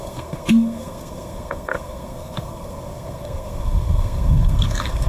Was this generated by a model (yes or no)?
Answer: yes